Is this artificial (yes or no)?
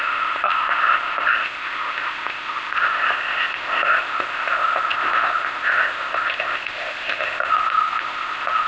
yes